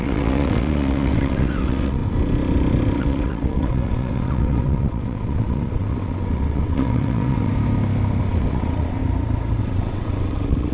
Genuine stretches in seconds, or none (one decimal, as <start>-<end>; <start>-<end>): 2.0-3.0; 7.5-8.3; 9.0-9.6